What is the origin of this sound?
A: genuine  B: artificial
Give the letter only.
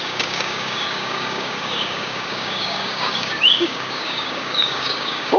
B